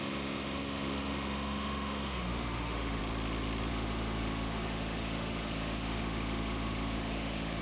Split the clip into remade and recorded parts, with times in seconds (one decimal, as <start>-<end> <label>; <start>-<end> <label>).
0.0-3.0 remade; 3.0-3.7 recorded; 3.7-7.6 remade